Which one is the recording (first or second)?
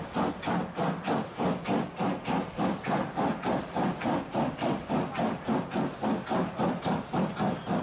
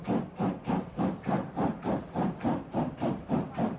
first